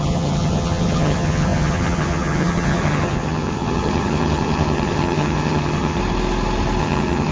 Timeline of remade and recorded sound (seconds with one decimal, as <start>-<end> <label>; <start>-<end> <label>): 0.0-6.0 remade; 6.0-6.8 recorded; 6.8-7.3 remade